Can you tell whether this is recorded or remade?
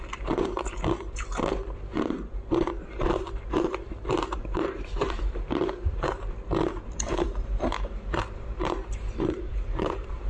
remade